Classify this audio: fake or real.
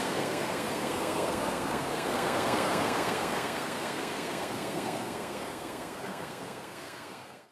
fake